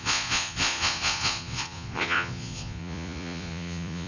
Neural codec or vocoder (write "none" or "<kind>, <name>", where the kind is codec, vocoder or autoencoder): vocoder, Vocos